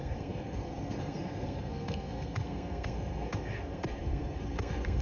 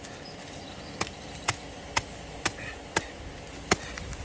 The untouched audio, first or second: second